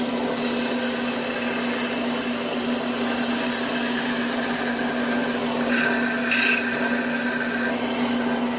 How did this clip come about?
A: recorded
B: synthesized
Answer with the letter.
A